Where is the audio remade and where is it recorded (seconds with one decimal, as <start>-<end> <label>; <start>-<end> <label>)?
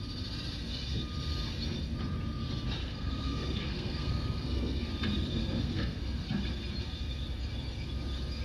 0.0-2.8 recorded; 2.8-4.9 remade; 4.9-5.4 recorded; 5.4-6.2 remade; 6.2-8.4 recorded